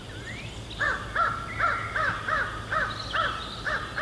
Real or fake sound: real